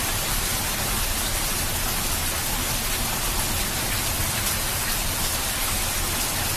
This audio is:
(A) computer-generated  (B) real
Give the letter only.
B